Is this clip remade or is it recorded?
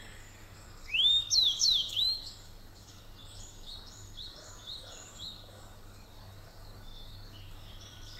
remade